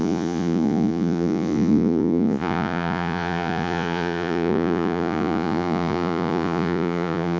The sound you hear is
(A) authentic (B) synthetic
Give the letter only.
B